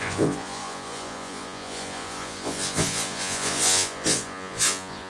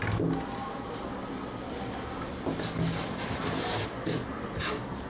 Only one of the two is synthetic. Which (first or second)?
first